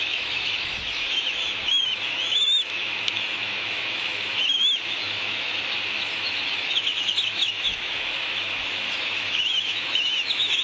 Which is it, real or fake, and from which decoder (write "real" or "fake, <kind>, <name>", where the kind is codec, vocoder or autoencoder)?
fake, autoencoder, DAC-VAE